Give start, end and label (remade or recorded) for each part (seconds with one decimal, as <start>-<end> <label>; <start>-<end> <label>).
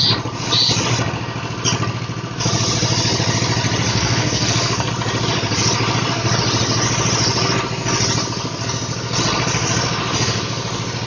0.0-3.9 recorded; 3.9-4.9 remade; 4.9-11.1 recorded